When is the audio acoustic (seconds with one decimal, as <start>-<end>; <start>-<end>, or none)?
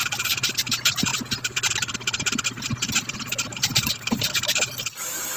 none